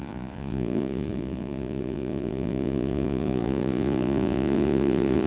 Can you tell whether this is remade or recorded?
remade